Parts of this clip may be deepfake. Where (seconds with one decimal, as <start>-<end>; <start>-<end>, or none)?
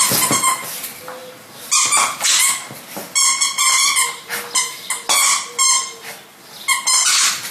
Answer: none